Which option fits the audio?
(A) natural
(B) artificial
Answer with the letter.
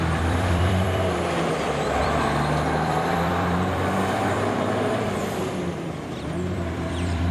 B